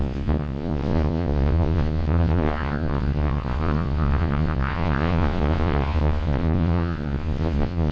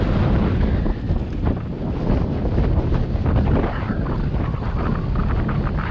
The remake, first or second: first